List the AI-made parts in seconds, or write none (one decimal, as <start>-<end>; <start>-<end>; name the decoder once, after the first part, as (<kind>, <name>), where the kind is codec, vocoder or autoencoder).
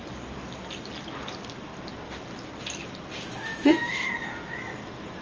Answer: 3.5-4.1 (autoencoder, DAC-VAE)